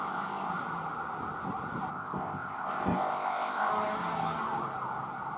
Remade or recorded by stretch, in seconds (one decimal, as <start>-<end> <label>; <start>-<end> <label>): 0.0-0.5 remade; 0.5-1.9 recorded; 1.9-3.7 remade; 3.7-5.4 recorded